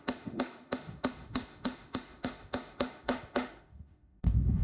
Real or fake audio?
fake